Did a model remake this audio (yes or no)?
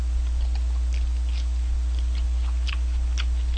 no